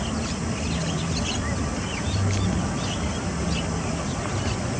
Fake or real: real